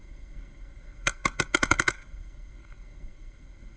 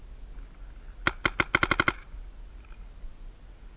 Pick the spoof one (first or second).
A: first